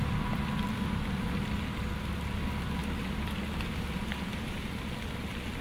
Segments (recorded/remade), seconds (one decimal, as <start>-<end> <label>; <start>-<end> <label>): 0.0-2.8 recorded; 2.8-4.7 remade; 4.7-5.6 recorded